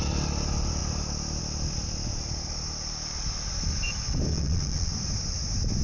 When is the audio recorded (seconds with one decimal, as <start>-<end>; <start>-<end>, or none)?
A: 0.0-4.3; 4.9-5.8

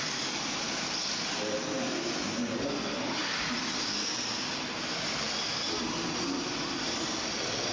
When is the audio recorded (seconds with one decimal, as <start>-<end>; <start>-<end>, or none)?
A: 0.0-7.7

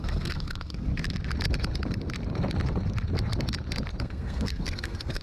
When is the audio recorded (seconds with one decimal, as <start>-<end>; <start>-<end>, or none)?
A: 0.9-4.0

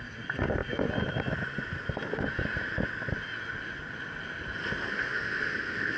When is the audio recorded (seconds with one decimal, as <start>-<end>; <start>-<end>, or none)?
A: 0.0-4.9